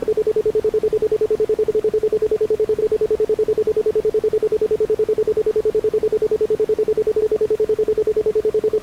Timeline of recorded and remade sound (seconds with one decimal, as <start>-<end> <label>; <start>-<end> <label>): 0.0-1.7 recorded; 1.7-2.8 remade; 2.8-7.2 recorded; 7.2-8.8 remade